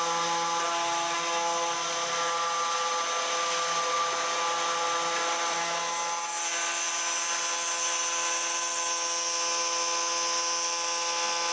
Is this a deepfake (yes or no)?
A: no